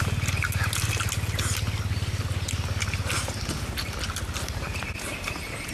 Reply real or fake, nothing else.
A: real